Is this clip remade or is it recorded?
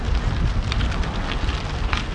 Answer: recorded